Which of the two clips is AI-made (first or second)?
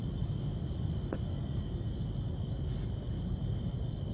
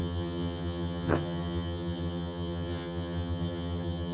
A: second